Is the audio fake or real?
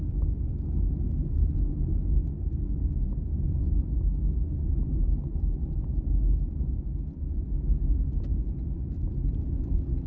fake